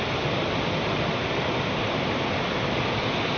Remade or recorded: recorded